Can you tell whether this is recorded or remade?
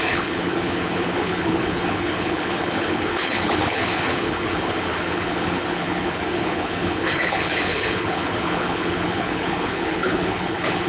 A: remade